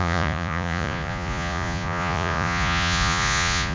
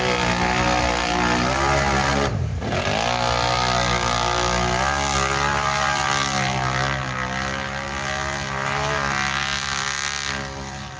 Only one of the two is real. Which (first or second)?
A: second